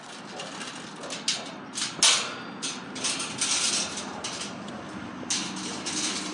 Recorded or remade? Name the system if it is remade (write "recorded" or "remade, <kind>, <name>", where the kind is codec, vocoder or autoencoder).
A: recorded